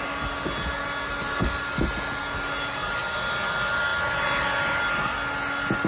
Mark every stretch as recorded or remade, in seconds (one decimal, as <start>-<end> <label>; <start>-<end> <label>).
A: 0.0-5.9 recorded